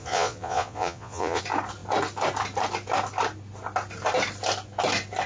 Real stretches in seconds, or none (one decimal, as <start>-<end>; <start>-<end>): 1.4-5.3